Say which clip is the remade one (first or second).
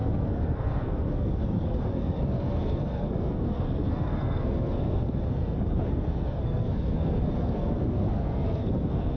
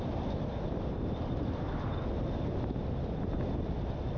first